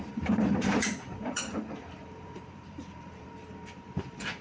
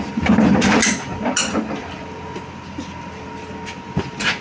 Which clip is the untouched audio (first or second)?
second